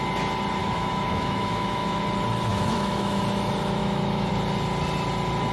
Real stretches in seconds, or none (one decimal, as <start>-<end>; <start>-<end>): 0.0-0.6; 2.0-2.5; 3.2-3.8; 4.3-5.5